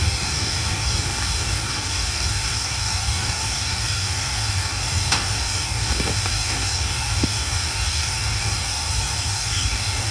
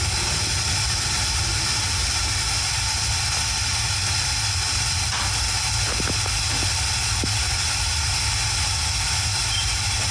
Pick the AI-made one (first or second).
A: first